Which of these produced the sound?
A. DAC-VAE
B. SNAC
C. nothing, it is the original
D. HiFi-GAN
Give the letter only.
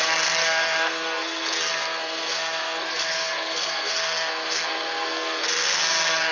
B